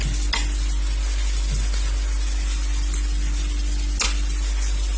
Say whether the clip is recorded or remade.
recorded